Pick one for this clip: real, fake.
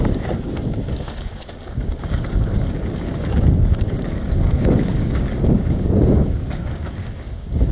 fake